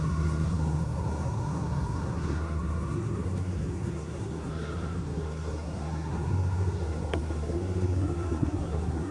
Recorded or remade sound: remade